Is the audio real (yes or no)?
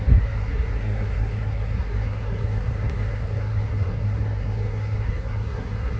no